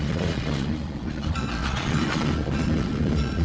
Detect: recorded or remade remade